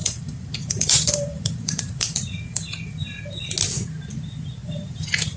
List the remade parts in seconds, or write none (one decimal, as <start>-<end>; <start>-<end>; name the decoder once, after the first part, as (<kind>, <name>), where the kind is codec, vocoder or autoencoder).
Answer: 0.0-3.2 (vocoder, BigVGAN v2); 4.6-5.4